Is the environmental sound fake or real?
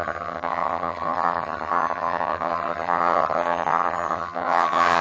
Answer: fake